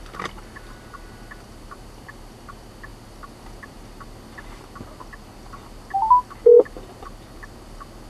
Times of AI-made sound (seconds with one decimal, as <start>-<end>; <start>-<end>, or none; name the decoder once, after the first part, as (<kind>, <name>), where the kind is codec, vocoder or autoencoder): none